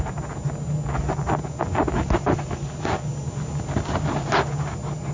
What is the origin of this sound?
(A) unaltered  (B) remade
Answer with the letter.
A